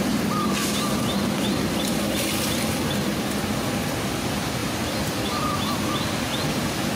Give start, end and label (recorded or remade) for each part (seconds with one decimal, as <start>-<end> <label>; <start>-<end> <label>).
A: 0.0-4.6 recorded; 4.6-5.9 remade; 5.9-7.0 recorded